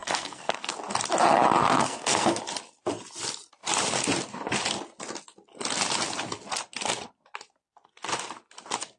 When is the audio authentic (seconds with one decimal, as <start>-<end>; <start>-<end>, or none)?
0.7-1.6; 2.4-9.0